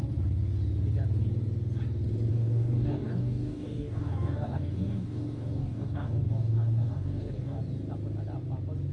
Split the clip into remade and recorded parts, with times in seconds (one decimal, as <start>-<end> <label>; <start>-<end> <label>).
0.0-2.3 recorded; 2.3-7.6 remade; 7.6-8.9 recorded